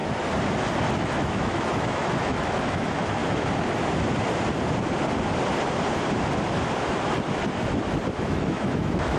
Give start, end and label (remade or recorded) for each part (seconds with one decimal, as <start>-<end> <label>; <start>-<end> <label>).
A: 0.0-0.9 recorded; 0.9-3.2 remade; 3.2-8.2 recorded; 8.2-9.2 remade